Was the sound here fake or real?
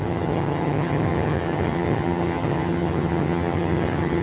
fake